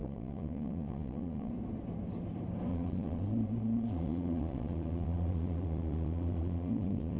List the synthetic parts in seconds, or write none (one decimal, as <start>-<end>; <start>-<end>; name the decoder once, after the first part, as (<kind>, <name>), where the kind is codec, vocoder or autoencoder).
0.0-1.5 (vocoder, Vocos); 2.7-7.2